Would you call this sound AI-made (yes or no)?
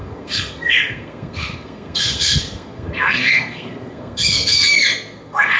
yes